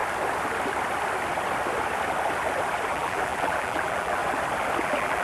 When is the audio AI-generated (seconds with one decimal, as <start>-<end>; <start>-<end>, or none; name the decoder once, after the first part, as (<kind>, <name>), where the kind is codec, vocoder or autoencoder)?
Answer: 2.9-4.2 (vocoder, BigVGAN v2); 4.8-5.2